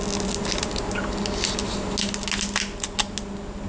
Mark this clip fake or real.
real